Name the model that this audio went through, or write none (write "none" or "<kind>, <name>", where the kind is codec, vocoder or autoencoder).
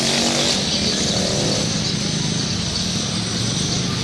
none